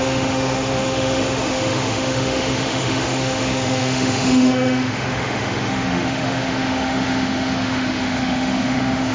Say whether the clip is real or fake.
fake